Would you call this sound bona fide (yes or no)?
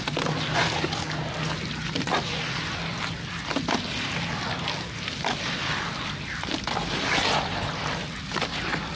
yes